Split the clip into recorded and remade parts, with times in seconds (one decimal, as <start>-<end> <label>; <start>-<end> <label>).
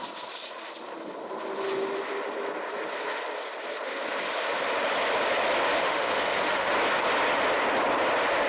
0.0-5.8 recorded; 5.8-6.7 remade; 6.7-8.5 recorded